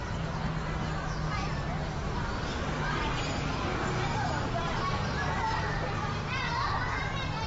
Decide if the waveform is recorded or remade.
recorded